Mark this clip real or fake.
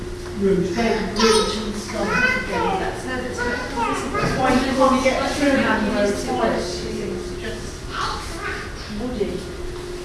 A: real